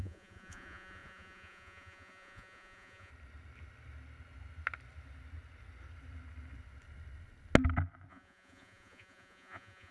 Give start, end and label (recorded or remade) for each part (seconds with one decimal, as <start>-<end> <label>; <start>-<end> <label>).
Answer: 0.0-3.1 remade; 3.1-8.1 recorded; 8.1-9.9 remade